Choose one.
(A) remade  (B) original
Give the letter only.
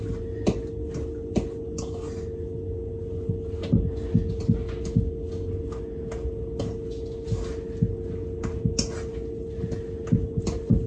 B